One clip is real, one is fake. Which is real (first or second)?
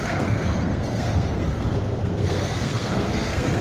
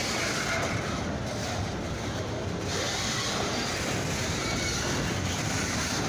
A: second